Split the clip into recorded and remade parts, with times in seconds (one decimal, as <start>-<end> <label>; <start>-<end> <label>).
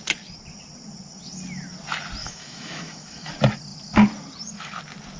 0.0-2.2 recorded; 2.2-3.3 remade; 3.3-5.2 recorded